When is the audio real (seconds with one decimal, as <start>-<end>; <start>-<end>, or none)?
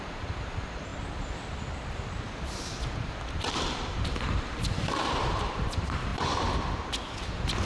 0.9-3.4; 6.1-7.7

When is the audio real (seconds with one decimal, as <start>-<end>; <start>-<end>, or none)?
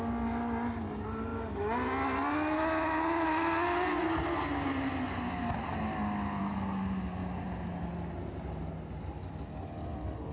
0.0-10.3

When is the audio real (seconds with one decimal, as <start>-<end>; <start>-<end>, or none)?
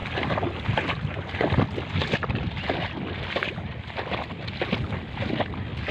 0.0-5.9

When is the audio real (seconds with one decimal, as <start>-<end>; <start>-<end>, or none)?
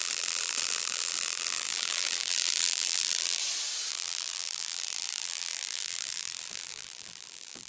3.4-3.9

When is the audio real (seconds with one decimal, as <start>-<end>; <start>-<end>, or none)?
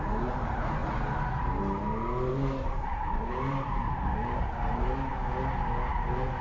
0.8-2.3; 5.1-5.9